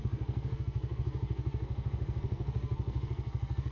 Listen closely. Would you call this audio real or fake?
fake